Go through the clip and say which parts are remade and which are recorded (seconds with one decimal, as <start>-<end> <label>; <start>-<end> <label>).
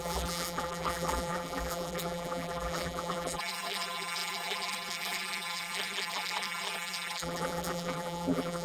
0.0-8.6 remade